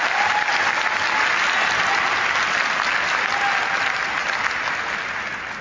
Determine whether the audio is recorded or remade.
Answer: recorded